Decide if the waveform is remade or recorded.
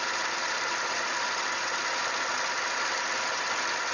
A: recorded